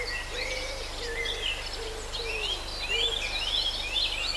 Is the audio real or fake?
real